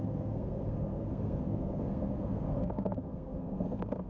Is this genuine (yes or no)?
no